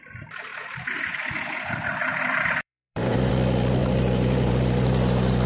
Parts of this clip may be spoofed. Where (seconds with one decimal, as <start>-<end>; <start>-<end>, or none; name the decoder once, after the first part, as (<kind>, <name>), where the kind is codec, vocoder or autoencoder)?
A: 0.5-1.2 (vocoder, BigVGAN v2); 2.1-3.3; 3.8-5.5